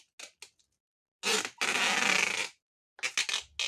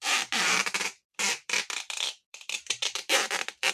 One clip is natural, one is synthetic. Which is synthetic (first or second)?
second